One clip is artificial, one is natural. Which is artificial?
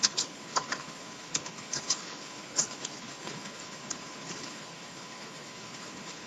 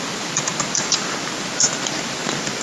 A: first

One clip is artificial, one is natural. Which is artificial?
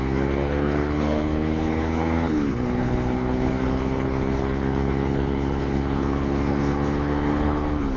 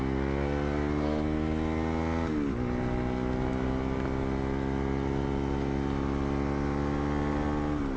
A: first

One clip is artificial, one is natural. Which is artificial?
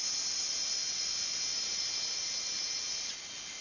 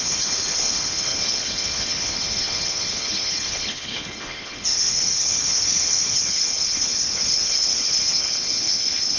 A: second